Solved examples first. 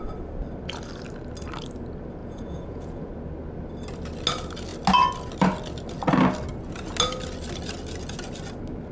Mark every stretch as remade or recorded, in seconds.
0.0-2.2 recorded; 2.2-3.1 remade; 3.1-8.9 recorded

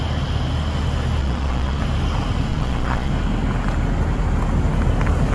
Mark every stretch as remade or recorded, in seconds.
0.0-1.2 recorded; 1.2-1.8 remade; 1.8-2.5 recorded; 2.5-3.1 remade; 3.1-5.3 recorded

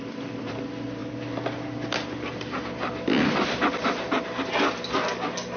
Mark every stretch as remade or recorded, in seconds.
0.0-5.6 recorded

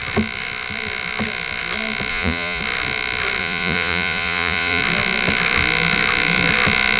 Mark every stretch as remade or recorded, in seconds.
0.0-2.1 recorded; 2.1-2.6 remade; 2.6-3.4 recorded; 3.4-4.8 remade; 4.8-7.0 recorded

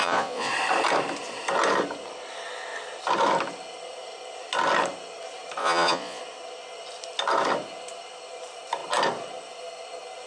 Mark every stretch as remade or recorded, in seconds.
0.0-0.5 remade; 0.5-5.6 recorded; 5.6-6.2 remade; 6.2-10.3 recorded

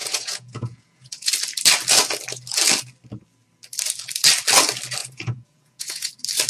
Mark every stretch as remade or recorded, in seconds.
0.0-1.3 remade; 1.3-5.0 recorded; 5.0-6.1 remade; 6.1-6.5 recorded

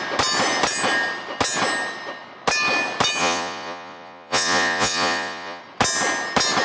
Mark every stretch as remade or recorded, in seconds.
0.0-3.2 recorded; 3.2-5.6 remade; 5.6-6.6 recorded

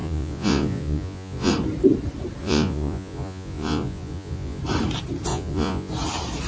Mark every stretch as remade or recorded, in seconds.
0.0-1.5 remade; 1.5-2.4 recorded; 2.4-4.6 remade; 4.6-5.3 recorded; 5.3-5.9 remade; 5.9-6.5 recorded